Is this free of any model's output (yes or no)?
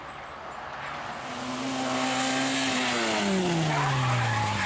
yes